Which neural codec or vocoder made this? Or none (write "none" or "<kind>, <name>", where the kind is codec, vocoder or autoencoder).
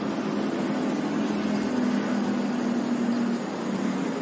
none